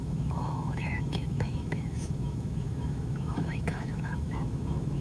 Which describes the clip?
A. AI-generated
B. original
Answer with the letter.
A